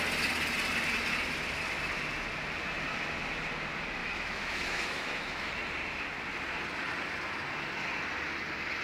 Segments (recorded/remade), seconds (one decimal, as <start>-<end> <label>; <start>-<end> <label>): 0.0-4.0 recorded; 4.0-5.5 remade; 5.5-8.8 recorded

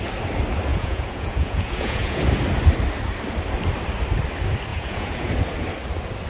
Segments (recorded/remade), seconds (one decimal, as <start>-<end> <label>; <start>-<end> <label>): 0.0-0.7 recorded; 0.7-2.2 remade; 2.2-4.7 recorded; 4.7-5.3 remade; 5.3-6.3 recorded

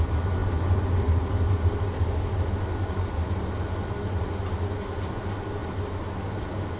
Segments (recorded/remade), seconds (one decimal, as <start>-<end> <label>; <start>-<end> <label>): 0.0-6.8 recorded

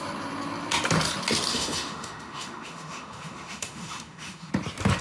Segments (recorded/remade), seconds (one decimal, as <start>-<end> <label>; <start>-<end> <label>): 0.0-1.5 recorded; 1.5-4.5 remade; 4.5-5.0 recorded

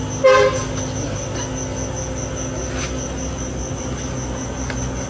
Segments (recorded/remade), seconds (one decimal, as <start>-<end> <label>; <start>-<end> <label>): 0.0-5.1 recorded

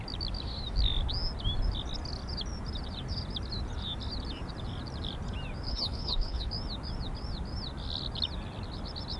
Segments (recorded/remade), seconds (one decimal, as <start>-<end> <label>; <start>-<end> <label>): 0.0-5.7 recorded; 5.7-6.5 remade; 6.5-9.2 recorded

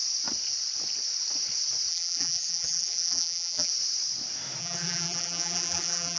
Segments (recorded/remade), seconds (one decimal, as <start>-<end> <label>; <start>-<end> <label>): 0.0-1.9 recorded; 1.9-3.7 remade; 3.7-4.6 recorded; 4.6-6.2 remade

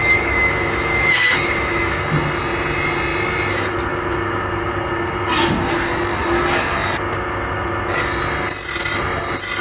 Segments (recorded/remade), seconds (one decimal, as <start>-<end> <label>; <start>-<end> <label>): 0.0-2.0 remade; 2.0-9.6 recorded